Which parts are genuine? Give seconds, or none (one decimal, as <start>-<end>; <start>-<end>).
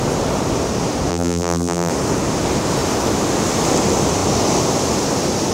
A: 0.0-1.1; 1.9-5.5